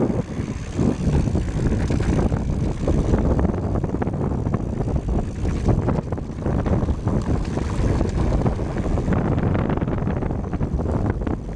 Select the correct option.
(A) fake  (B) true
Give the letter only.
B